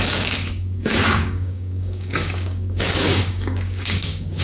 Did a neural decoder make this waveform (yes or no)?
yes